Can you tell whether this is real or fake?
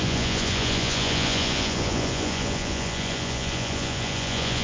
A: fake